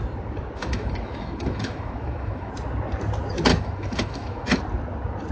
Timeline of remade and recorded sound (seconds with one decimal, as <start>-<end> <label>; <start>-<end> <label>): 0.0-0.6 recorded; 0.6-2.5 remade; 2.5-3.5 recorded; 3.5-4.6 remade; 4.6-5.3 recorded